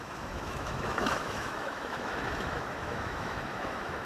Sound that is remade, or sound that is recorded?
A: remade